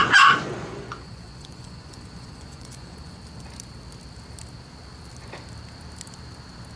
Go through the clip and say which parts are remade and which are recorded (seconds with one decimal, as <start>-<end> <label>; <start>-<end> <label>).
0.0-3.2 remade; 3.2-6.8 recorded